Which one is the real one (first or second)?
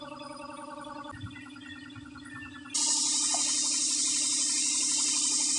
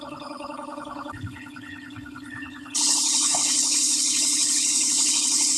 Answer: first